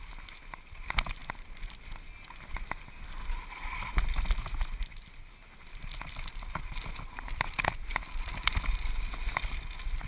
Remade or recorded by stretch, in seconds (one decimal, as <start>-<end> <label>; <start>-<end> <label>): 0.0-10.1 recorded